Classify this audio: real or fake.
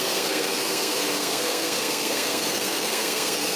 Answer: fake